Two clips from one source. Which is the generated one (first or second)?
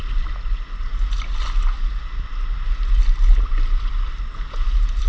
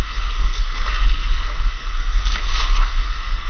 second